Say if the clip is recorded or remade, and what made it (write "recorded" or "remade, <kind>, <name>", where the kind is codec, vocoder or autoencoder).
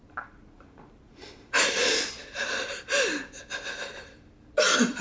recorded